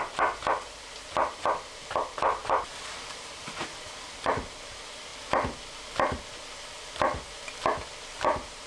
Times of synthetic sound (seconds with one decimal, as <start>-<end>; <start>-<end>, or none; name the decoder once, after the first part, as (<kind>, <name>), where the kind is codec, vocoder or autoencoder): 0.0-5.1 (vocoder, BigVGAN v2); 7.9-8.7